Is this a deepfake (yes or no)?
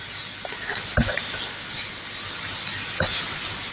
no